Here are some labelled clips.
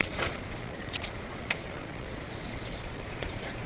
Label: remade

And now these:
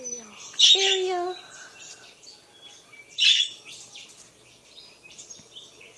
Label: recorded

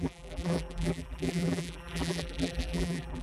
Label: remade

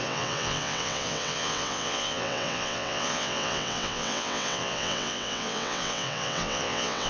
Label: remade